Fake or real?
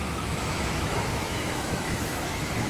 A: fake